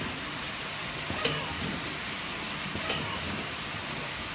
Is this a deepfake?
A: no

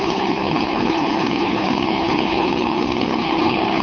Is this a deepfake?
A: yes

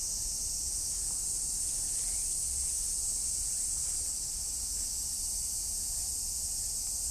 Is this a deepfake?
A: no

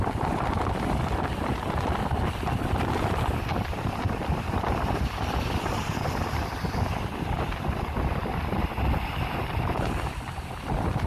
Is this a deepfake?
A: no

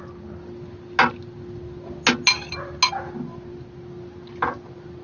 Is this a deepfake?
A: no